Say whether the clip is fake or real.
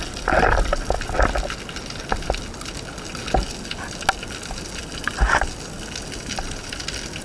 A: real